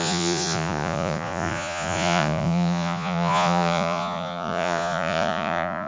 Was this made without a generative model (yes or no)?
no